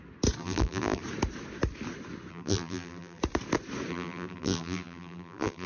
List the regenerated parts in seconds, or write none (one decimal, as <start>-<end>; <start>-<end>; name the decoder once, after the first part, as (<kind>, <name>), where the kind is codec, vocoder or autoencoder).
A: 0.4-1.0 (vocoder, BigVGAN v2); 2.3-3.2; 3.9-5.7